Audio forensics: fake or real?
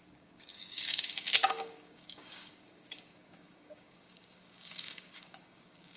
fake